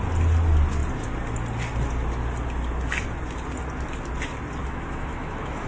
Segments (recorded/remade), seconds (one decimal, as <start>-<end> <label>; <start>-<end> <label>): 0.0-4.6 recorded; 4.6-5.7 remade